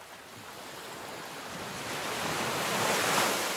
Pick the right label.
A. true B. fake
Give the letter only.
A